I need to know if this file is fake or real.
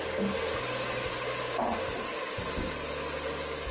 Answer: real